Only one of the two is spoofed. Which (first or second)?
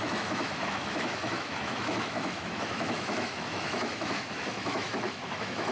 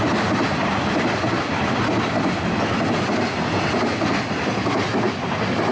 first